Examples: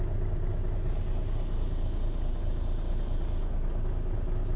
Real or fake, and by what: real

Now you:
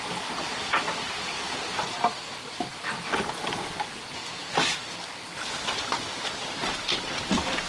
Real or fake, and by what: real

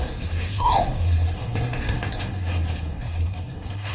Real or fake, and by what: fake, codec, SNAC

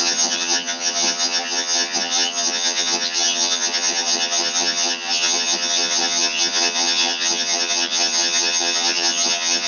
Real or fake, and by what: fake, vocoder, HiFi-GAN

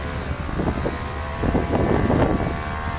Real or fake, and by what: real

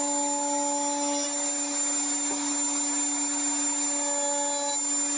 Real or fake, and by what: real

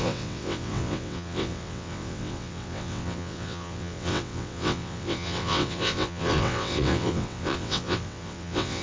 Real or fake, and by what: fake, vocoder, WaveNeXt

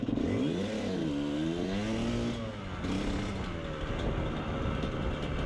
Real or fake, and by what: real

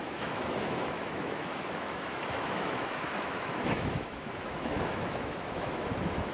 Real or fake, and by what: fake, autoencoder, DAC-VAE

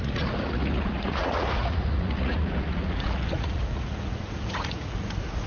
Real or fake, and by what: fake, vocoder, Vocos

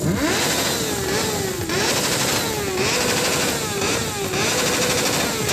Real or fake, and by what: real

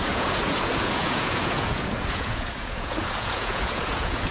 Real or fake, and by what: fake, vocoder, Vocos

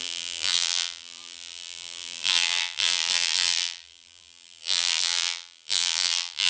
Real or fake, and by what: fake, vocoder, BigVGAN v2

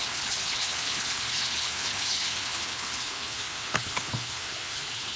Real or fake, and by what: fake, codec, HILCodec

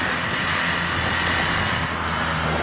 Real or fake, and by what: real